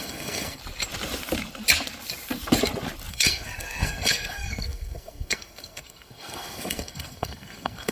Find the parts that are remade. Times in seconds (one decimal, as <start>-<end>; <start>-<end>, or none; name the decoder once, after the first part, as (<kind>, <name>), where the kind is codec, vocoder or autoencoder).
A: 0.0-0.6 (codec, SNAC); 3.1-7.9